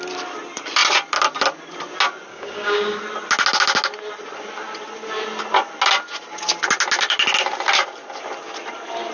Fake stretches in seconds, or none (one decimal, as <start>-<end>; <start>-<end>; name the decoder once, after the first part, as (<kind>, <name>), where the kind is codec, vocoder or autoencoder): 2.3-3.0 (codec, DAC)